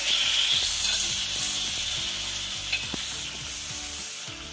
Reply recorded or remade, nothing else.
recorded